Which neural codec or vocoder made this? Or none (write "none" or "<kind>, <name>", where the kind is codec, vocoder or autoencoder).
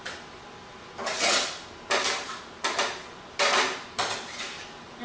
none